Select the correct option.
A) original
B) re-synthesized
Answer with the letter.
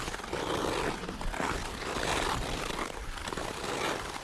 A